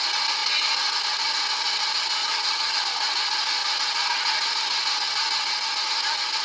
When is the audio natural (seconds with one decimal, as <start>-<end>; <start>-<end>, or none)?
0.0-2.2; 2.8-6.4